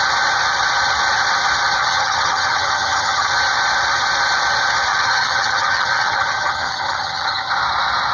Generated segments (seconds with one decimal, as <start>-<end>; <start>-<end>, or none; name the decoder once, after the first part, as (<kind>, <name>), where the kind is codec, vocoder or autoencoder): 1.8-3.3 (vocoder, HiFi-GAN); 4.9-7.5